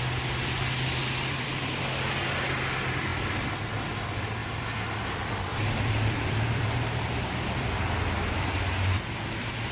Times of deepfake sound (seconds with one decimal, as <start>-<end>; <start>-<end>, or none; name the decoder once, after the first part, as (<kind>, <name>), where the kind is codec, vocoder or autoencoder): 1.0-1.8 (vocoder, BigVGAN v2); 4.4-5.1; 5.5-8.6